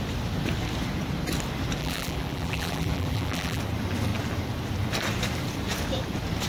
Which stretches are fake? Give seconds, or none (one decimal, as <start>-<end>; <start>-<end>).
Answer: 1.8-3.6